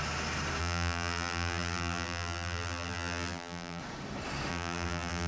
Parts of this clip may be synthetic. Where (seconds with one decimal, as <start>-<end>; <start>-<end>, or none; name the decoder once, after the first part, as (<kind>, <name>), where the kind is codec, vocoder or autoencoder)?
0.6-3.8 (vocoder, BigVGAN v2); 4.5-5.3

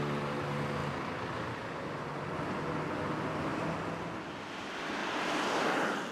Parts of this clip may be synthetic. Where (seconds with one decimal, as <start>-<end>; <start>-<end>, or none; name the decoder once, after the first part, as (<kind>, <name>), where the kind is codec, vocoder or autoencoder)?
5.0-5.6 (vocoder, BigVGAN v2)

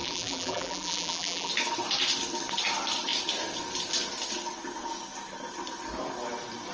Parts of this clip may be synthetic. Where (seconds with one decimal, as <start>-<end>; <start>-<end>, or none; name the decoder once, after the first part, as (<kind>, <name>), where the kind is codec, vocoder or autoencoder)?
0.0-1.5 (vocoder, BigVGAN v2)

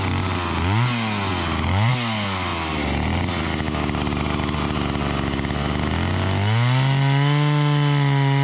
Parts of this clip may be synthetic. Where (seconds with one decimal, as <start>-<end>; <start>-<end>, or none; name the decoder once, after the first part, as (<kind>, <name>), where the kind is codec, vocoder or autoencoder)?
none

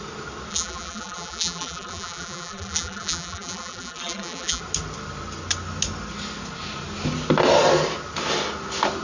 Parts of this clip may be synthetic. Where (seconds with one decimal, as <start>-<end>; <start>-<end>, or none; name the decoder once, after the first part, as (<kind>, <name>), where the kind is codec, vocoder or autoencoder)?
0.5-4.6 (vocoder, BigVGAN v2)

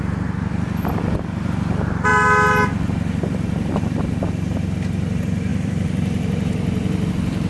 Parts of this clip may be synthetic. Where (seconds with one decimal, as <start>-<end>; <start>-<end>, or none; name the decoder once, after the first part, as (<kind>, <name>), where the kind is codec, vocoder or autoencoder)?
5.5-7.1 (vocoder, BigVGAN v2)

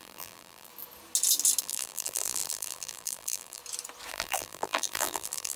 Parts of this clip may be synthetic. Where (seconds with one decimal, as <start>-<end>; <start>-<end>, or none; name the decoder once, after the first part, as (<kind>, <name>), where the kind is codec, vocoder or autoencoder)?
0.0-0.7 (vocoder, BigVGAN v2); 1.6-3.6; 4.1-5.6

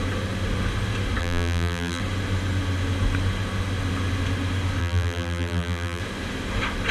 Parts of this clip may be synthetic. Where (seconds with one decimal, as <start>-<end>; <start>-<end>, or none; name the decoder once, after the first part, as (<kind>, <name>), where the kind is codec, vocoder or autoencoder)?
1.2-2.0 (vocoder, BigVGAN v2); 4.8-6.0